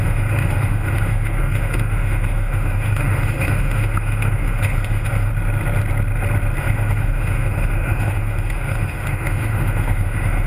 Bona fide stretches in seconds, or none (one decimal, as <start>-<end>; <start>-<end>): 5.3-6.6